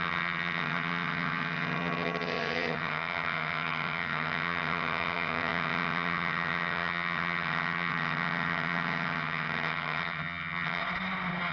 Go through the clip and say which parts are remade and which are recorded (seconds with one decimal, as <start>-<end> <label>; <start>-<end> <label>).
0.0-10.8 remade; 10.8-11.5 recorded